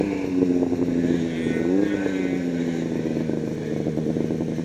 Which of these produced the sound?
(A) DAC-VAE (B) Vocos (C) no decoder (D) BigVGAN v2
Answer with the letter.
C